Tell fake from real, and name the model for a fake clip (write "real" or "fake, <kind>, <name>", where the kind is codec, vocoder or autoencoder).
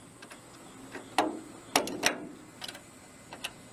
real